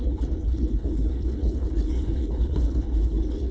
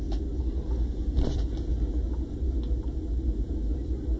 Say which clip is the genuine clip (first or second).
second